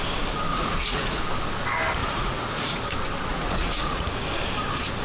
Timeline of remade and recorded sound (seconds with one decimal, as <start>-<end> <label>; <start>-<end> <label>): 0.0-0.5 recorded; 0.5-1.2 remade; 1.2-2.0 recorded; 2.0-2.8 remade; 2.8-3.3 recorded; 3.3-4.0 remade; 4.0-5.0 recorded